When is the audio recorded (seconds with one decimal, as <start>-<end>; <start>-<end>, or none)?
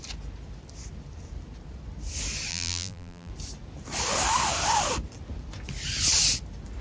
0.0-2.5; 3.3-6.8